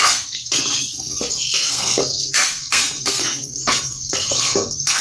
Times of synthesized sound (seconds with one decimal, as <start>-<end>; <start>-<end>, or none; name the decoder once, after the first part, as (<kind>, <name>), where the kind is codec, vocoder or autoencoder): 0.0-5.0 (codec, SNAC)